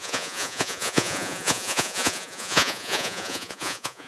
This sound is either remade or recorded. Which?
remade